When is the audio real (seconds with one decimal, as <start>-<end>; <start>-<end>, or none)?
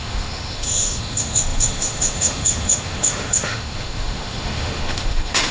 none